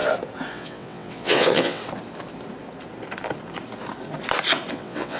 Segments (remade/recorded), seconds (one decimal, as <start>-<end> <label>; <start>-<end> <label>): 0.0-0.5 recorded; 0.5-1.8 remade; 1.8-4.7 recorded; 4.7-5.2 remade